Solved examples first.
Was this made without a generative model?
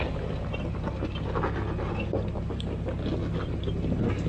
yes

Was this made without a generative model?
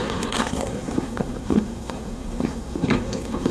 no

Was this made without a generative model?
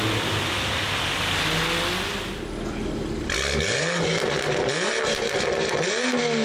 yes